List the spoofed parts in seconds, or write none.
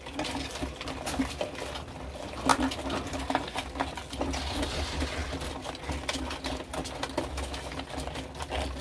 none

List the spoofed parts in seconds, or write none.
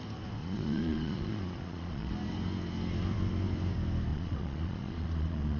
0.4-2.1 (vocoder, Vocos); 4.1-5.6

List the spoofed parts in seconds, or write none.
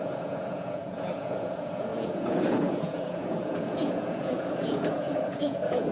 0.0-5.9 (vocoder, Vocos)